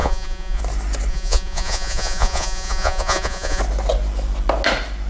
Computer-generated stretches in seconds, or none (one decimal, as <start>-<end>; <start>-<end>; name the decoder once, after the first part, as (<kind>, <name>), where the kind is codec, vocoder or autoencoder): 0.0-0.6 (vocoder, Vocos); 1.1-3.6